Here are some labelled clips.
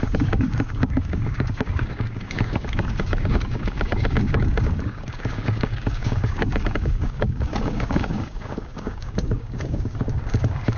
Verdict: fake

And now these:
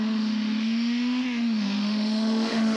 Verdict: fake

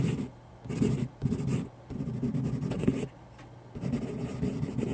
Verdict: real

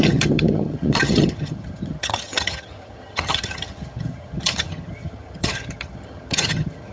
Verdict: fake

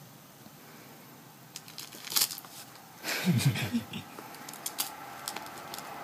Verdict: real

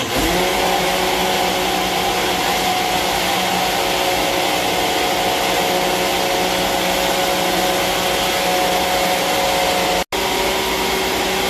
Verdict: real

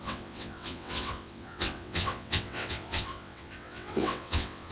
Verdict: fake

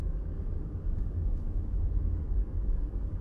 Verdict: fake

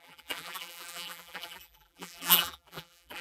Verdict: fake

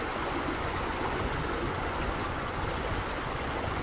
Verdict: fake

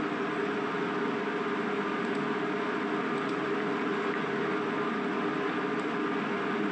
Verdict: real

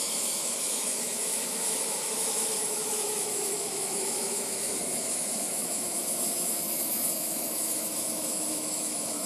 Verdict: fake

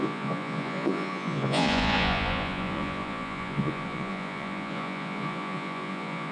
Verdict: fake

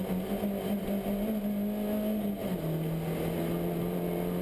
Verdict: real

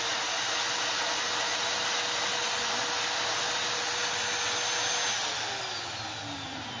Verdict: real